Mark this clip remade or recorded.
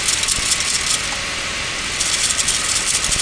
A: recorded